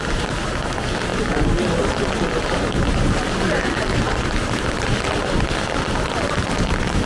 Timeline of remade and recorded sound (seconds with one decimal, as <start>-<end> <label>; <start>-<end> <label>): 0.0-3.9 recorded; 3.9-4.9 remade; 4.9-7.1 recorded